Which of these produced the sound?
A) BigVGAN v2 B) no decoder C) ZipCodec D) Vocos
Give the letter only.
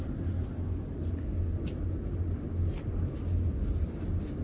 B